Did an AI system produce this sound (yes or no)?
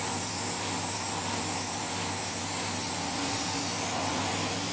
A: no